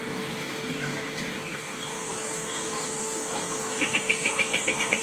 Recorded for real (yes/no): no